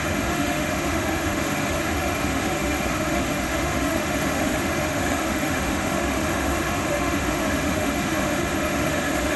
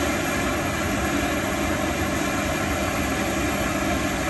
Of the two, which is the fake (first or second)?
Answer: first